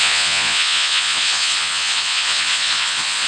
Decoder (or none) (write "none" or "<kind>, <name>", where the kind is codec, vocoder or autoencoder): vocoder, Vocos